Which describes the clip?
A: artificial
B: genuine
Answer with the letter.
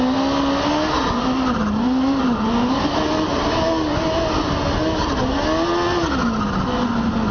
B